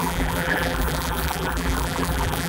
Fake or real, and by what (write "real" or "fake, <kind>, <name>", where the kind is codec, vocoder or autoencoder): fake, vocoder, BigVGAN v2